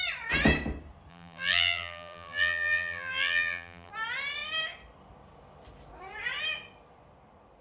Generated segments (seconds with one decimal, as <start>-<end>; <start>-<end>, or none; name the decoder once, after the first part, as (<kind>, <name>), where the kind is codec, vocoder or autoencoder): 1.1-3.9 (vocoder, BigVGAN v2)